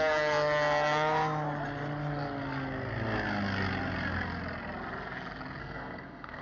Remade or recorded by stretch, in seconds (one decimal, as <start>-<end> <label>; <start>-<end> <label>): 0.0-5.6 recorded; 5.6-6.4 remade